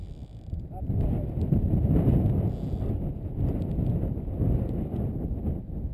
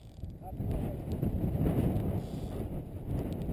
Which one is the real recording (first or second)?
first